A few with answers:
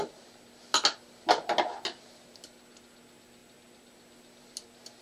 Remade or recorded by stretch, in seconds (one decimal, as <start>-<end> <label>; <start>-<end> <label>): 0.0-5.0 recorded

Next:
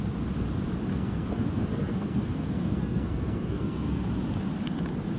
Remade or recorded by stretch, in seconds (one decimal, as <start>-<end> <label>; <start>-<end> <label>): 0.0-0.9 recorded; 0.9-4.0 remade; 4.0-5.2 recorded

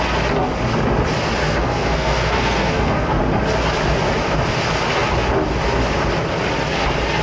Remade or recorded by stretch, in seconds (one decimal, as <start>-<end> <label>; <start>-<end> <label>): 0.0-1.4 recorded; 1.4-3.2 remade; 3.2-7.2 recorded